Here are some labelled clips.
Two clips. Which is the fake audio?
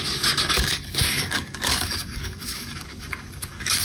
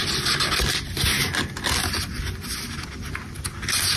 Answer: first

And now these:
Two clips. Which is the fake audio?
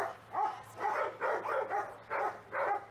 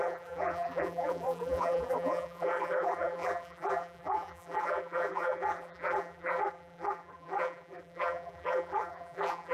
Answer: second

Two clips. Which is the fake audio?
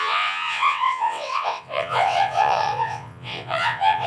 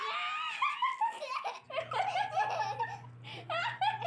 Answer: first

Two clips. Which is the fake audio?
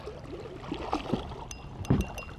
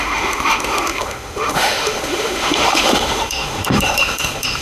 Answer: second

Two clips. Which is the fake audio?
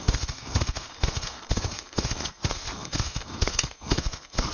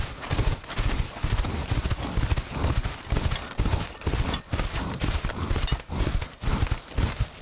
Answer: first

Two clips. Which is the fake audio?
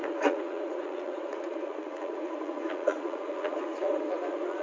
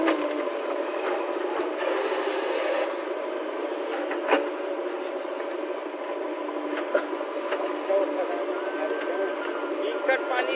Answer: first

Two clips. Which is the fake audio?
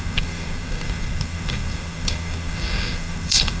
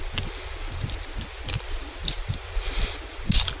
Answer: first